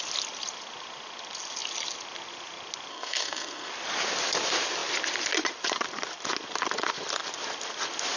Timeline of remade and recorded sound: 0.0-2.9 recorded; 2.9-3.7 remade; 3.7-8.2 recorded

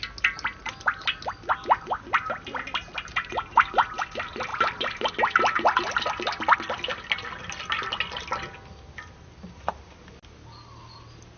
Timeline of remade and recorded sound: 0.0-4.5 recorded; 4.5-5.1 remade; 5.1-11.4 recorded